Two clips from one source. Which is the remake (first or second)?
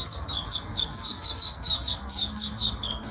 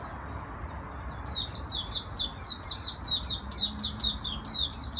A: first